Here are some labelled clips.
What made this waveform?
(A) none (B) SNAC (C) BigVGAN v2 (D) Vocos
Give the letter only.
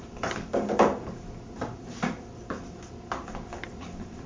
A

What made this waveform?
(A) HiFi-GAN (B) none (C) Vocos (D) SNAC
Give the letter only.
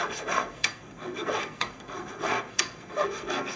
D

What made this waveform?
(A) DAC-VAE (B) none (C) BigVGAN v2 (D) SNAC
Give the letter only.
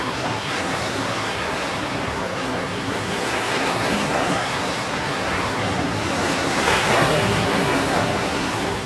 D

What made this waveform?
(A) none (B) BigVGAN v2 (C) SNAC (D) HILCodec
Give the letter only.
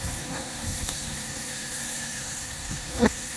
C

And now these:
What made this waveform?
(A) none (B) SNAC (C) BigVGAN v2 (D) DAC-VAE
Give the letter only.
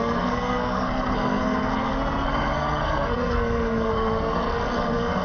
B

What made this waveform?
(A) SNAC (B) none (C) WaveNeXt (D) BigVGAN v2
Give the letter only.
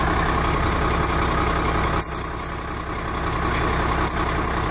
B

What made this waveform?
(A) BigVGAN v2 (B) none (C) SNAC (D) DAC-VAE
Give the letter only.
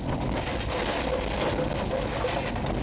B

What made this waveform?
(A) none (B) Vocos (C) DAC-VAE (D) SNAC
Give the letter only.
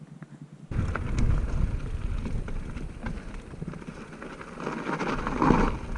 A